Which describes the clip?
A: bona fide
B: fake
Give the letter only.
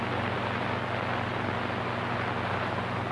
A